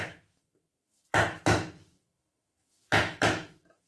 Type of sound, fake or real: fake